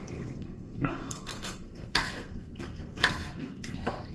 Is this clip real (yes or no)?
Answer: no